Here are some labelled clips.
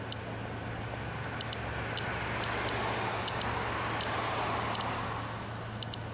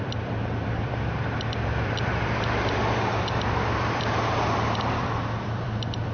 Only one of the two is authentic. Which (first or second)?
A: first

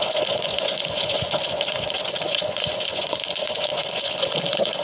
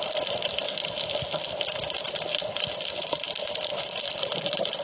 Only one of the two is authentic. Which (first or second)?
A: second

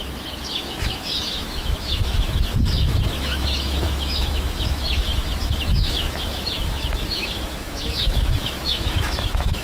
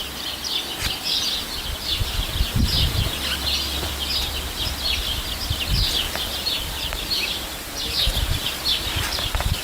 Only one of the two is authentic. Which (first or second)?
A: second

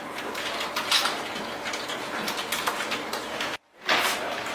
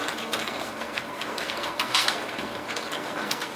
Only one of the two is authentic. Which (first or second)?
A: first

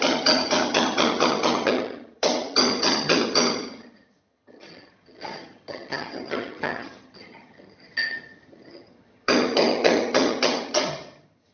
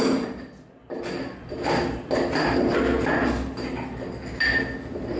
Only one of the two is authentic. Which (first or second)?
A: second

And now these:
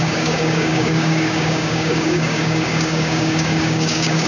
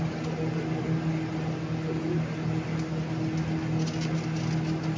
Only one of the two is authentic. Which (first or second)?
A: second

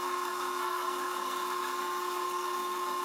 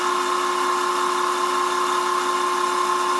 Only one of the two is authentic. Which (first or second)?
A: second